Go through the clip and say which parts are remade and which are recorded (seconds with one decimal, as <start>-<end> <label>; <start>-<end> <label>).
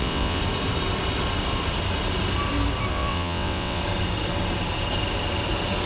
0.0-0.4 remade; 0.4-2.9 recorded; 2.9-3.8 remade; 3.8-5.9 recorded